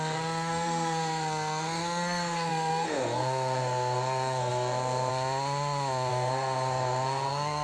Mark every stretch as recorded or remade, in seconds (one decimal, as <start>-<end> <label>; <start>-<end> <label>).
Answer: 0.0-5.1 remade; 5.1-6.1 recorded; 6.1-7.6 remade